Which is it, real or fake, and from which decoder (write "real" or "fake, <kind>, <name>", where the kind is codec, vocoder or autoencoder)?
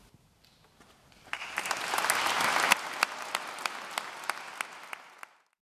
real